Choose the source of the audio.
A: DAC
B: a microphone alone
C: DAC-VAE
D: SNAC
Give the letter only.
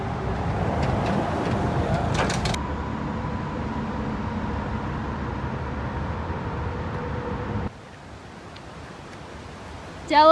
B